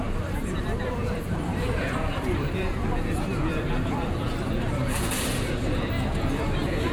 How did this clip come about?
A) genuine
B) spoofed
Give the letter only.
B